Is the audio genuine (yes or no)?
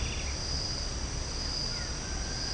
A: yes